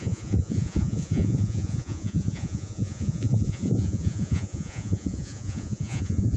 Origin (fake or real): fake